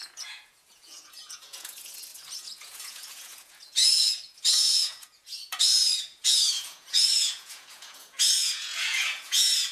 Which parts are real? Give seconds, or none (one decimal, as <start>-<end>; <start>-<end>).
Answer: none